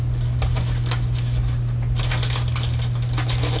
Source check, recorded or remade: recorded